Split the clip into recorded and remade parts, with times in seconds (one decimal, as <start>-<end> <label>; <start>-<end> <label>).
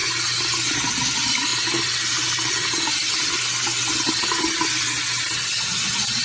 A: 0.0-6.2 recorded